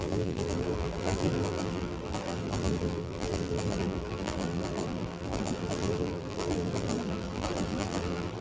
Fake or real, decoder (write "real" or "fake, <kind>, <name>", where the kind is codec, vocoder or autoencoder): fake, vocoder, BigVGAN v2